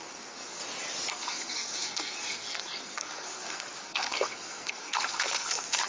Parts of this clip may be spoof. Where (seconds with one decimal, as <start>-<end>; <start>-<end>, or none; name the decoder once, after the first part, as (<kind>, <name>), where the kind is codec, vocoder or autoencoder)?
0.0-0.6 (codec, SNAC); 1.1-5.9